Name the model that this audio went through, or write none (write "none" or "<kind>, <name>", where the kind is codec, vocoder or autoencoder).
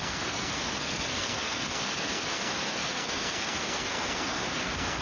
codec, SNAC